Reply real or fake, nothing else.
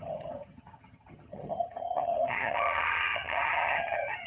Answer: fake